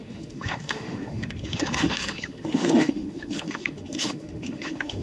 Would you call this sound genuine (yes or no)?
no